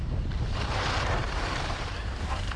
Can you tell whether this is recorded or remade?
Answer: remade